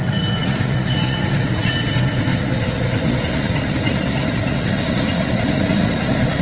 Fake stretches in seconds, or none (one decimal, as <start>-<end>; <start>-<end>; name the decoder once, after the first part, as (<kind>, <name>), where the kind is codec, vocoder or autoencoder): 0.4-1.7 (vocoder, Vocos); 2.3-6.4